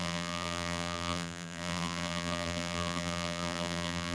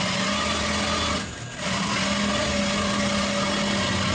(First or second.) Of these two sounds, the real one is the second